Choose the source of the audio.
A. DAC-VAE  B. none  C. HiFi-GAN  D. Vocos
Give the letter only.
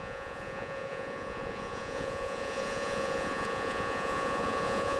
D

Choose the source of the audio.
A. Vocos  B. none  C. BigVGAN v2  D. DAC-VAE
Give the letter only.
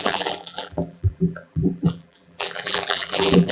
C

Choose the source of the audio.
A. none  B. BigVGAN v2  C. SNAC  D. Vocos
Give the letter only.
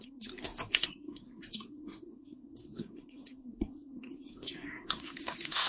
C